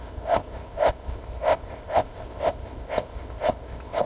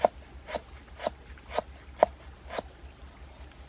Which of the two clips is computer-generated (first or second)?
first